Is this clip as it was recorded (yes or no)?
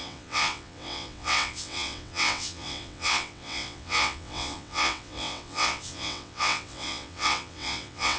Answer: no